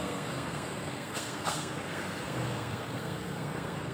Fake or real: fake